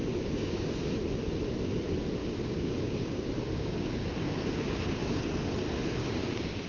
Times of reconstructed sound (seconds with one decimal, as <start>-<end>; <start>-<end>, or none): 0.0-0.7; 2.2-5.2; 6.0-6.7